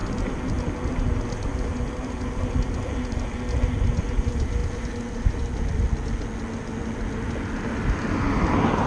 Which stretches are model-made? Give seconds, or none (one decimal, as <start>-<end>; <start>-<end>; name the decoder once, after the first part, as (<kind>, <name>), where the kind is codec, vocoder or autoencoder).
none